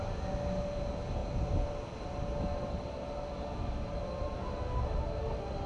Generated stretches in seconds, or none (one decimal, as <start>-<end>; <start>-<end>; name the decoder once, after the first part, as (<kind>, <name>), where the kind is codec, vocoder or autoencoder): none